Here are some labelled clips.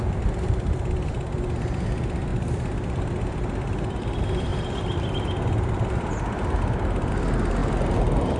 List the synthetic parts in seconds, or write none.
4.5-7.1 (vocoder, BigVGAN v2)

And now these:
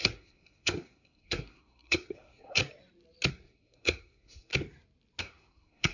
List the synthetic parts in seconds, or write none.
0.0-2.6 (codec, SNAC); 3.3-4.5; 5.2-5.9

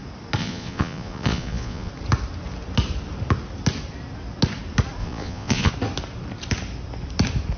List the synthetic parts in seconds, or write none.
0.4-1.9 (vocoder, Vocos); 5.0-5.7